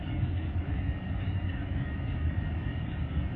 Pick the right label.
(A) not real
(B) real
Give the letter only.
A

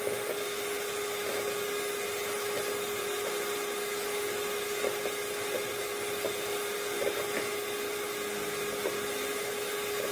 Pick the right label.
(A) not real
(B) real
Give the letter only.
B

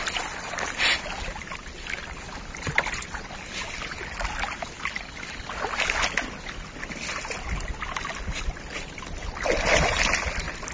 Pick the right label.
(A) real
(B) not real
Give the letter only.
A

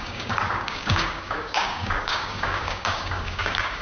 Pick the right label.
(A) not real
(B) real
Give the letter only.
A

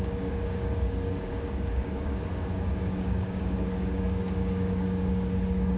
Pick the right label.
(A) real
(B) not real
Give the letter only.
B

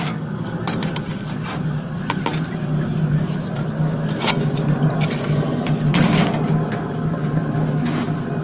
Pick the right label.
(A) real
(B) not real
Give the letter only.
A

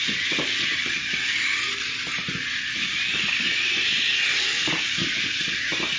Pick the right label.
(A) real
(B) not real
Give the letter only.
A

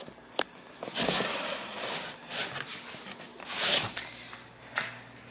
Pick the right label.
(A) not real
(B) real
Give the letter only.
B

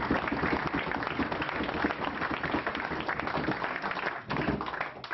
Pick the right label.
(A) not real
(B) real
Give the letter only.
B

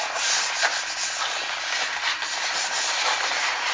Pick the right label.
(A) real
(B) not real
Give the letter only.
A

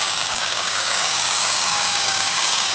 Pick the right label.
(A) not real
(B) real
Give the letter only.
A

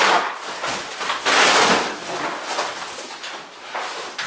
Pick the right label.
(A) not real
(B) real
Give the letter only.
B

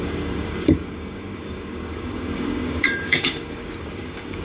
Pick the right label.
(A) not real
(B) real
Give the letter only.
A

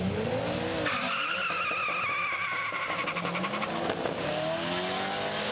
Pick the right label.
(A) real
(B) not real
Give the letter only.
A